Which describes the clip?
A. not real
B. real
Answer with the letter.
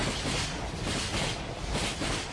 B